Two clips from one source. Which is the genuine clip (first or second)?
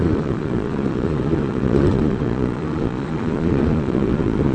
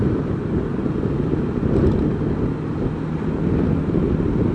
second